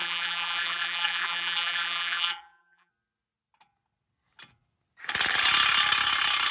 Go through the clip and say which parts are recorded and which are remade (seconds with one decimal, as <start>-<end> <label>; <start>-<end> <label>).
0.0-2.9 remade; 2.9-6.5 recorded